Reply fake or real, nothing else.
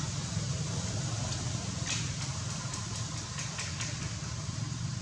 real